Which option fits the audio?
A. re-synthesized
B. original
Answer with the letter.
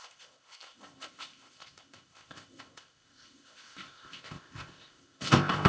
A